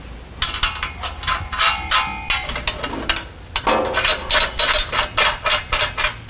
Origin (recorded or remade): recorded